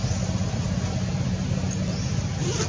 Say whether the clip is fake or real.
real